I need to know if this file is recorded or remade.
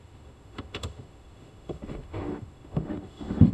remade